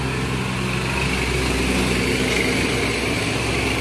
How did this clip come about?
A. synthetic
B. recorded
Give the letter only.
B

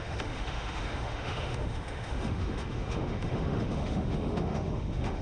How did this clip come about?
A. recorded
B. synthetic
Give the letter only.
B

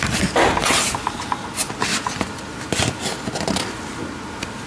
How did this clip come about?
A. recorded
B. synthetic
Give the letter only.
A